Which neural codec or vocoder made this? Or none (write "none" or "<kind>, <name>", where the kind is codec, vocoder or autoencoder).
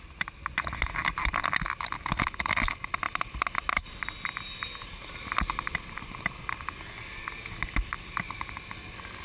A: none